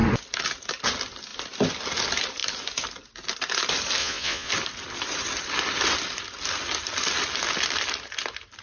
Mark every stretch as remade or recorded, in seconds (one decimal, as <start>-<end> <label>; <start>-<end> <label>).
0.0-4.0 recorded; 4.0-4.5 remade; 4.5-8.6 recorded